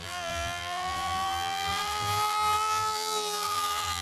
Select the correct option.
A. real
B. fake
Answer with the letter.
B